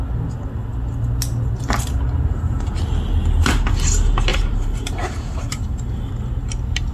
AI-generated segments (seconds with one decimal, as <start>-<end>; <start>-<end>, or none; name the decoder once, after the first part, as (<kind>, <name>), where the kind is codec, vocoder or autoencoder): 4.3-6.1 (vocoder, BigVGAN v2)